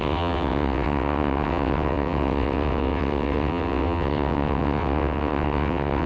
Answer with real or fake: fake